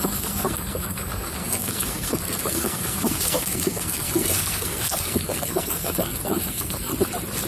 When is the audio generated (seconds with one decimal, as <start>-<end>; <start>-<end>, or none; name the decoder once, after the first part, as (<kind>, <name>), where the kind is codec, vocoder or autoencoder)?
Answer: 0.0-6.9 (codec, SNAC)